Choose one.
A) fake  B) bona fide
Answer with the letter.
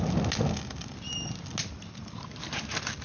B